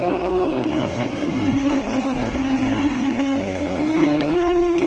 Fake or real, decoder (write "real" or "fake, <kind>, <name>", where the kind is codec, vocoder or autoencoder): fake, codec, SNAC